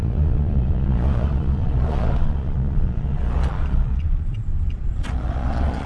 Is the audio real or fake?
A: fake